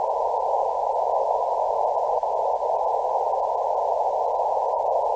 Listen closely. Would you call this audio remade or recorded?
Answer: recorded